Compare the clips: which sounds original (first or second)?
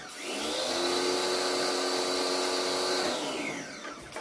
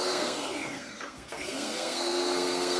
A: first